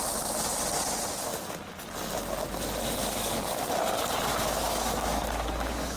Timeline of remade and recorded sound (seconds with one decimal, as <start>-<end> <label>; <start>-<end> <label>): 0.0-3.0 recorded; 3.0-3.6 remade; 3.6-4.3 recorded; 4.3-6.0 remade